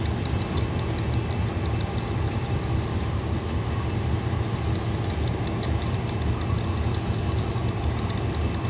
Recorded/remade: recorded